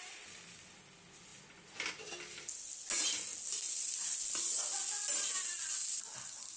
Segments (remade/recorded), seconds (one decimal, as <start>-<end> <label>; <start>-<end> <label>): 0.0-6.6 recorded